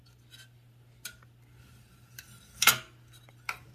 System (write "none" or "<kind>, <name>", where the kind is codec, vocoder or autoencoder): none